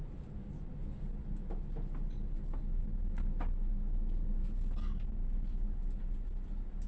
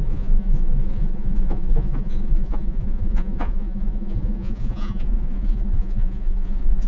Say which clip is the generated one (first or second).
second